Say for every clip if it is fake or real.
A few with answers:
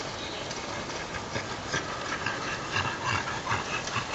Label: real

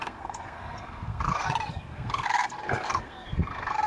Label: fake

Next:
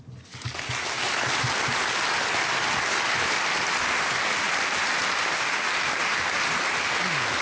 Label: real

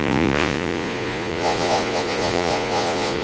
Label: fake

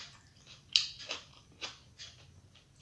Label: real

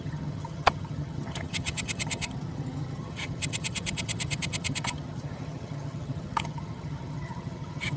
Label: fake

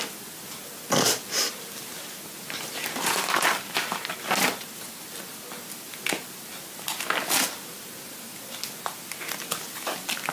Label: real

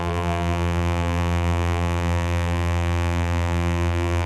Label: fake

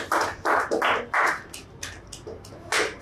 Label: real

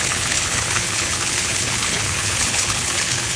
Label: fake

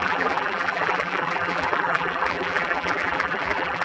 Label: fake